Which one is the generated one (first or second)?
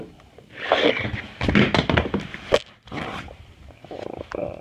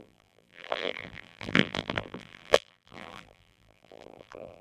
second